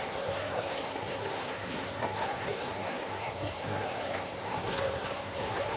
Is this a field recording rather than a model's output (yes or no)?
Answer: no